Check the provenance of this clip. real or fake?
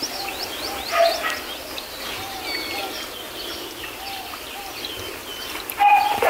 real